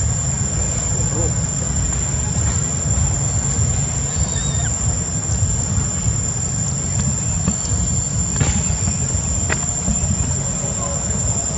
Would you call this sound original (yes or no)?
yes